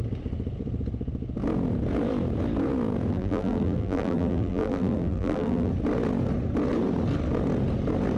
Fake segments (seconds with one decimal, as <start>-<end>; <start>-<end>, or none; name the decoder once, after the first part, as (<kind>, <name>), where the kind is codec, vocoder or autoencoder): 3.1-5.7 (vocoder, BigVGAN v2)